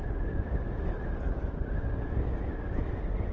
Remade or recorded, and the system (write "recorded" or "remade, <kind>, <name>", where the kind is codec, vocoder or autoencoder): recorded